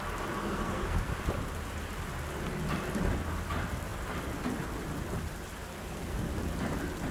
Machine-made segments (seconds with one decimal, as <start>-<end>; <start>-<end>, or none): 0.4-1.2; 5.8-6.3